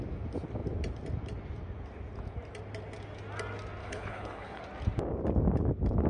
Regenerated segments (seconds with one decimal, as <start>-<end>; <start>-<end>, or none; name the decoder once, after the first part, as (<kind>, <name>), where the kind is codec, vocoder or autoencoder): 3.8-4.6 (codec, HILCodec)